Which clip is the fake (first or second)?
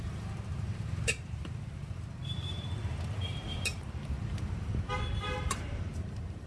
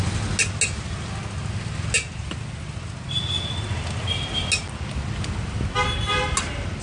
first